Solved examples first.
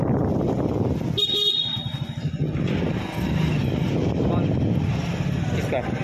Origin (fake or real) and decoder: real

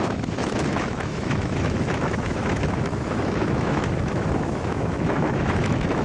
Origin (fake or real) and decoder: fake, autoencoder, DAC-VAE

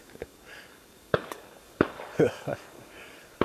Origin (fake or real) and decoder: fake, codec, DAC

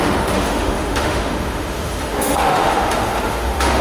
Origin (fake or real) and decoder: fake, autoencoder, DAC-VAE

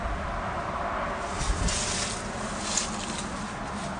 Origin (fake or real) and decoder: real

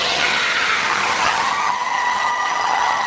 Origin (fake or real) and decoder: fake, vocoder, HiFi-GAN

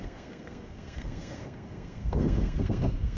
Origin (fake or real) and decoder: fake, codec, SNAC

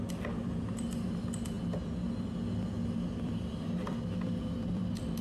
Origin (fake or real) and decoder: real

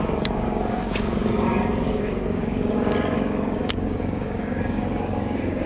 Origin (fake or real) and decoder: fake, codec, DAC